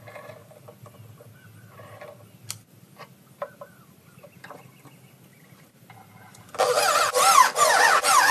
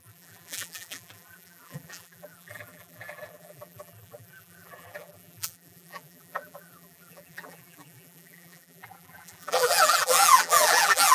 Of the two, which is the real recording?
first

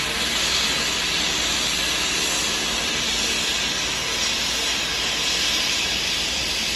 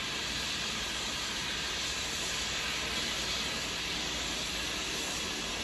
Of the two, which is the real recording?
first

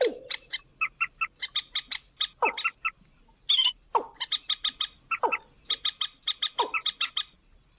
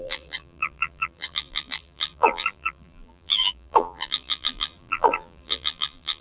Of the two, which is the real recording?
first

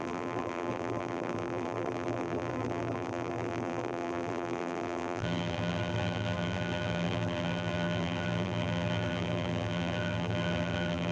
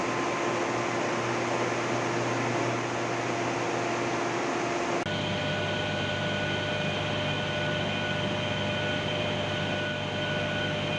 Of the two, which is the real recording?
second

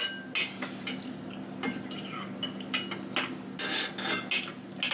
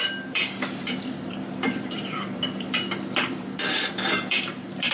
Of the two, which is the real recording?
first